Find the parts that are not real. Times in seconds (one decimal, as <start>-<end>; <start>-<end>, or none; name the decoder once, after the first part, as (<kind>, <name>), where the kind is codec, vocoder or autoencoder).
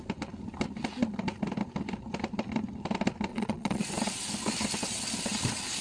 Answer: 3.3-3.9 (vocoder, Vocos)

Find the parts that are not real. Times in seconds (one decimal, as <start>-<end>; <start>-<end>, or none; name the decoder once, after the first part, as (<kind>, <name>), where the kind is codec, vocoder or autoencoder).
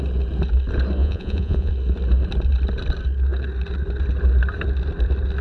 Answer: 1.0-1.7 (vocoder, Vocos)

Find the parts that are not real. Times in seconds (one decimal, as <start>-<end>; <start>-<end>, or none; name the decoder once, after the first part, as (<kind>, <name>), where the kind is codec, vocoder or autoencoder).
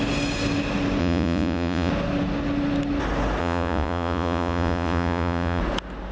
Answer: 1.0-1.9 (vocoder, Vocos); 3.4-5.6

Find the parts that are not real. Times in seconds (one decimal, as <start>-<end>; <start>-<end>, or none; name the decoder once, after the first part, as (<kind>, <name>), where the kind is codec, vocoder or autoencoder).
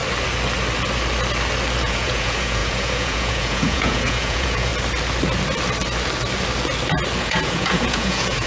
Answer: 1.8-4.7 (vocoder, Vocos); 7.2-8.5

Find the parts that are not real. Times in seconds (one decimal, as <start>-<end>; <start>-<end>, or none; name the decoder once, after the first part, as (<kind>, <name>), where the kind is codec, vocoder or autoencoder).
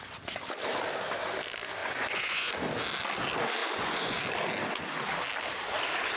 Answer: 1.8-2.5 (vocoder, Vocos); 3.6-4.2